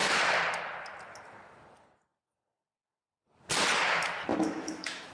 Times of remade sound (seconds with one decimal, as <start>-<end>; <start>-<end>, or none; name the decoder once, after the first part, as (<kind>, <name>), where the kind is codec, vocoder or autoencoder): 4.3-5.1 (autoencoder, DAC-VAE)